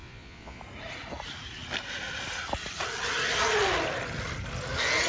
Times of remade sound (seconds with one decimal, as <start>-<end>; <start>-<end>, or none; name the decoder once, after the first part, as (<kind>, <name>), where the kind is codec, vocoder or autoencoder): 0.0-0.6 (vocoder, Vocos)